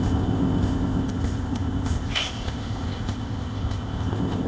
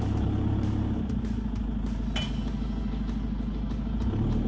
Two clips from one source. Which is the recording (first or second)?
second